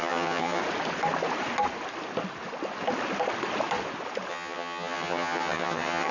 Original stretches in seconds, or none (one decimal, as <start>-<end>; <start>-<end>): 0.6-4.3